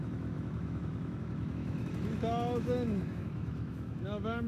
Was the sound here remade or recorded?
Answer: remade